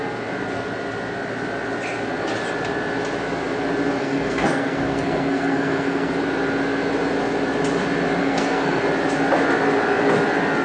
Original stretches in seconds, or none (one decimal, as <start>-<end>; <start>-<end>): 0.0-4.0; 6.1-8.2; 8.8-10.6